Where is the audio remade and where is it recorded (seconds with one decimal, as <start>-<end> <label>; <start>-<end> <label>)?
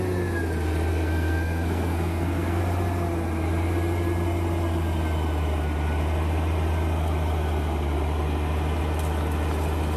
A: 0.0-0.9 recorded; 0.9-2.6 remade; 2.6-10.0 recorded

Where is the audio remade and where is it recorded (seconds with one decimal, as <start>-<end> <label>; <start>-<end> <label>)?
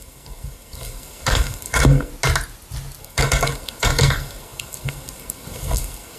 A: 0.0-2.1 remade; 2.1-3.0 recorded; 3.0-6.2 remade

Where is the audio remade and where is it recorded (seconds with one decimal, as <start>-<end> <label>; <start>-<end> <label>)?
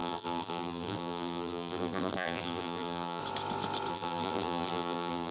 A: 0.0-3.2 remade; 3.2-3.9 recorded; 3.9-5.3 remade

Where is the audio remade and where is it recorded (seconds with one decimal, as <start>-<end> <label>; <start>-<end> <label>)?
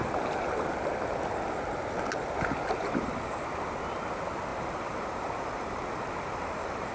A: 0.0-4.5 recorded; 4.5-6.9 remade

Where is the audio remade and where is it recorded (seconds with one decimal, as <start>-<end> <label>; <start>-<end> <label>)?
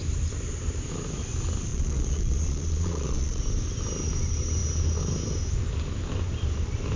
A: 0.0-1.7 recorded; 1.7-3.4 remade; 3.4-7.0 recorded